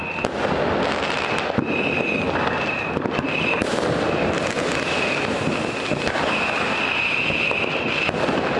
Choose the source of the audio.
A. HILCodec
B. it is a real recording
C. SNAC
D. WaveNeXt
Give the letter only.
B